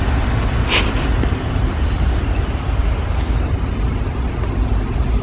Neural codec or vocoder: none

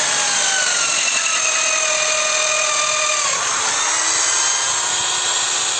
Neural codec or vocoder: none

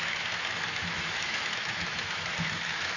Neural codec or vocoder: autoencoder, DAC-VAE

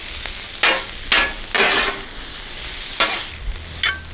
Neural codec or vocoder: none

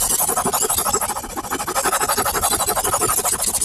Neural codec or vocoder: none